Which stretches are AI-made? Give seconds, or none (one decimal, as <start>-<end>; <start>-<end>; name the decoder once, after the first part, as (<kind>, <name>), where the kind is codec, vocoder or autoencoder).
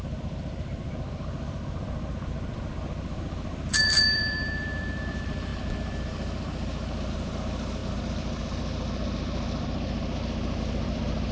0.0-5.5 (vocoder, BigVGAN v2); 7.1-7.8; 10.6-11.3